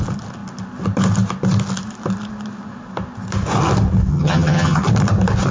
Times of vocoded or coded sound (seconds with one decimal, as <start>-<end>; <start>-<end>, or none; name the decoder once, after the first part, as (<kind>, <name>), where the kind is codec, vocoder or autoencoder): 4.1-4.8 (vocoder, HiFi-GAN)